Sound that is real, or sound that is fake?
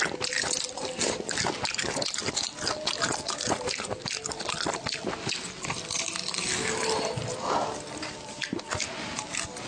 real